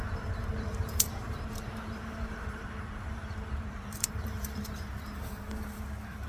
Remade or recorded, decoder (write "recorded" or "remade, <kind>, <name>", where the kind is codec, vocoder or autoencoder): remade, vocoder, BigVGAN v2